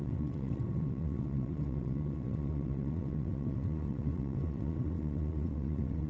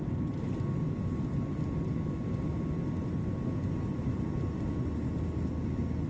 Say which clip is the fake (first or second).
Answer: first